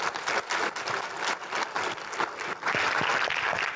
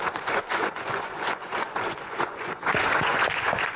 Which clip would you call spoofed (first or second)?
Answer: second